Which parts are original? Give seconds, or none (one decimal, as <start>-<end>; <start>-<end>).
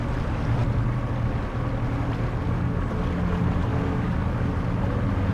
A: 0.0-3.7; 4.5-5.3